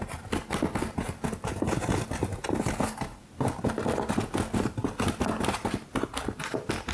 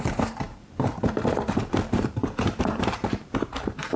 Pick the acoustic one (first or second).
first